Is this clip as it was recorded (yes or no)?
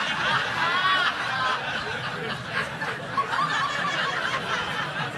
yes